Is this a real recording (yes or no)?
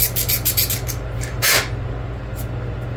yes